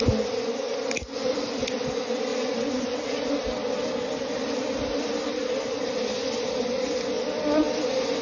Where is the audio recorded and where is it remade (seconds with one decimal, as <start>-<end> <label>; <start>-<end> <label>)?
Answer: 0.0-8.2 recorded